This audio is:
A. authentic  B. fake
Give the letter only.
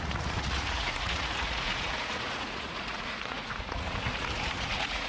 B